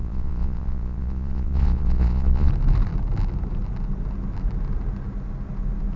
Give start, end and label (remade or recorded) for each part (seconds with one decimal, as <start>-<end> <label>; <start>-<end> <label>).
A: 0.0-2.5 remade; 2.5-6.0 recorded

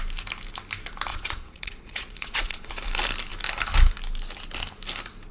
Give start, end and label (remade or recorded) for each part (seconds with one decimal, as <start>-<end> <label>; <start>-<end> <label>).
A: 0.0-1.1 recorded; 1.1-2.7 remade; 2.7-5.3 recorded

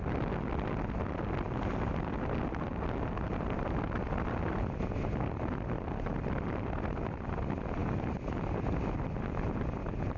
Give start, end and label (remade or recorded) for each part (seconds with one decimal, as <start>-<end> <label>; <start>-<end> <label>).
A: 0.0-10.2 recorded

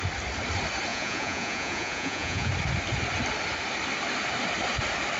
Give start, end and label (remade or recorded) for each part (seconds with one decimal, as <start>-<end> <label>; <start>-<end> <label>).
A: 0.0-0.9 recorded; 0.9-2.5 remade; 2.5-5.2 recorded

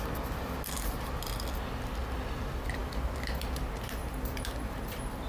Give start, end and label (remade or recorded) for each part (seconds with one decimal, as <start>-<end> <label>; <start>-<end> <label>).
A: 0.0-5.3 recorded